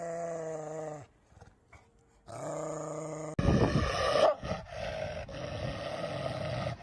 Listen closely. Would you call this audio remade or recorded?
recorded